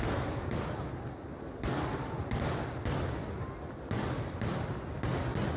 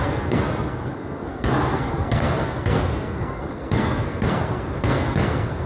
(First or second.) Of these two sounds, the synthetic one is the second